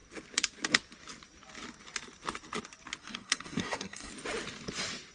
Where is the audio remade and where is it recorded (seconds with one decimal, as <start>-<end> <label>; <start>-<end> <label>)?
0.0-3.0 recorded; 3.0-4.1 remade; 4.1-5.1 recorded